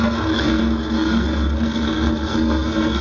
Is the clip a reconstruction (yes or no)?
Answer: yes